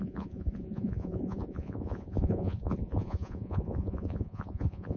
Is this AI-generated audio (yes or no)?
yes